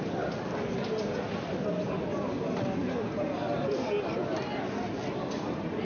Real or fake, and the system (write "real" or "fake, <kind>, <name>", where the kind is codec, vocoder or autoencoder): real